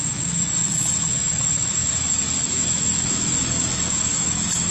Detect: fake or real fake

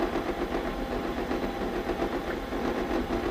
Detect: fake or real real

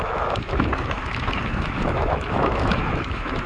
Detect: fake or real fake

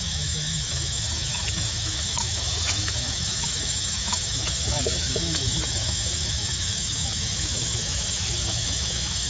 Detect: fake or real fake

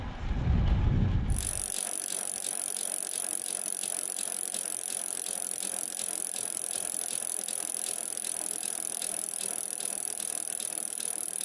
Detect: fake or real real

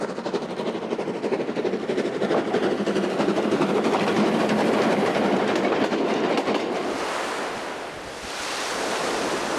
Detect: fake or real real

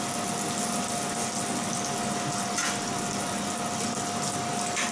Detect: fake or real real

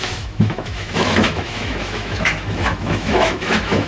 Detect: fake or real fake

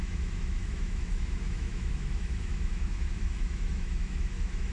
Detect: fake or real fake